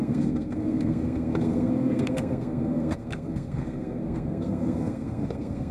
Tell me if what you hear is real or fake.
fake